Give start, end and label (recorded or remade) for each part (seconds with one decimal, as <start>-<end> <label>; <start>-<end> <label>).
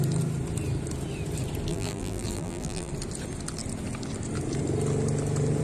0.0-1.7 recorded; 1.7-2.9 remade; 2.9-5.6 recorded